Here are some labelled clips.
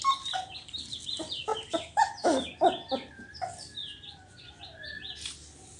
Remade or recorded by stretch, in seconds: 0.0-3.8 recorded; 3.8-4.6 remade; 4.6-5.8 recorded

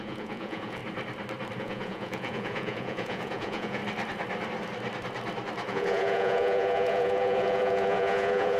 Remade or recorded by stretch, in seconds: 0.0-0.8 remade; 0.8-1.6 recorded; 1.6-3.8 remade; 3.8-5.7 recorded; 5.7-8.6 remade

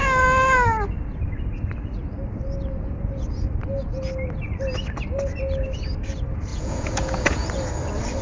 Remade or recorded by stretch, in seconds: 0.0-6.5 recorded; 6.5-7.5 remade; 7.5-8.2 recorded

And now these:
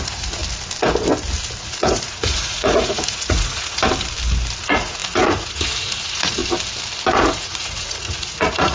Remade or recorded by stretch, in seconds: 0.0-0.4 remade; 0.4-1.6 recorded; 1.6-3.8 remade; 3.8-4.6 recorded; 4.6-6.4 remade; 6.4-7.1 recorded; 7.1-8.7 remade